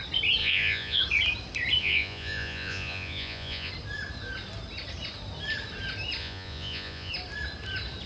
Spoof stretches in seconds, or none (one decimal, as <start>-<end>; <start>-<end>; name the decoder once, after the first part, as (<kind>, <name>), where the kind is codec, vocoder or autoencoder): 0.4-1.0 (vocoder, Vocos); 1.8-3.7; 6.2-7.1